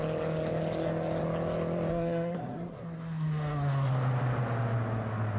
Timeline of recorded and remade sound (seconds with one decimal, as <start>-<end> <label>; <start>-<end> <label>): 0.0-1.9 recorded; 1.9-3.9 remade; 3.9-5.4 recorded